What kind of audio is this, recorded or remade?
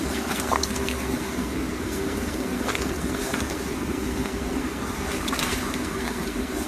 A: remade